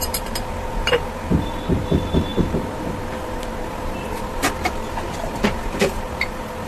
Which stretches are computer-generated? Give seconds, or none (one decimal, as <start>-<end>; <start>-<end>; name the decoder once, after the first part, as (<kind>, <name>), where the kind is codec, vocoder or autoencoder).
0.0-6.7 (vocoder, BigVGAN v2)

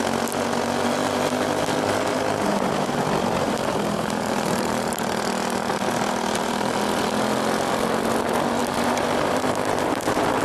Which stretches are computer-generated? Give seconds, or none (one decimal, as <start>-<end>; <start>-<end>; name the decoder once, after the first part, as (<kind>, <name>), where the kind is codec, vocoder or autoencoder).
1.0-4.9 (vocoder, BigVGAN v2); 8.6-9.8

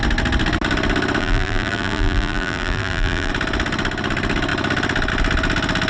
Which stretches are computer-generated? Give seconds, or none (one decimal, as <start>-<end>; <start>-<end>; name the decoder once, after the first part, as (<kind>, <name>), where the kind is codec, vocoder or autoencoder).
1.2-3.3 (vocoder, BigVGAN v2)

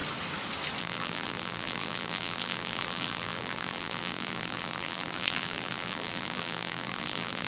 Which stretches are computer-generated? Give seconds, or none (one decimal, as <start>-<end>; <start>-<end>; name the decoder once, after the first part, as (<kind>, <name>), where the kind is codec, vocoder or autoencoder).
0.8-7.5 (vocoder, BigVGAN v2)

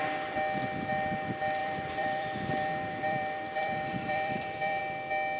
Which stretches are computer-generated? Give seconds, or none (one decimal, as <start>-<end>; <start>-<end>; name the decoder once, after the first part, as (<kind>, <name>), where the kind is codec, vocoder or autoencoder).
1.6-4.8 (vocoder, BigVGAN v2)

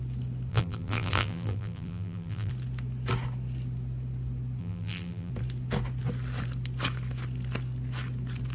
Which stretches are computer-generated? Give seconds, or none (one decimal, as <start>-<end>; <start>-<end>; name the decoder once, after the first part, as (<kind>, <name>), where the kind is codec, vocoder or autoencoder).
0.5-2.5 (vocoder, BigVGAN v2); 4.6-5.3